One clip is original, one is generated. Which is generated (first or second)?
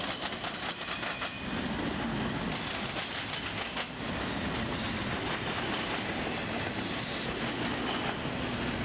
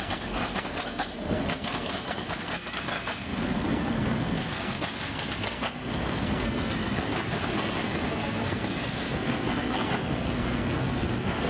second